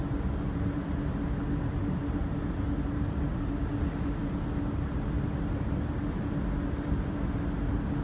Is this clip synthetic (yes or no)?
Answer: no